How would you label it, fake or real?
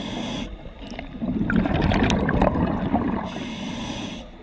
real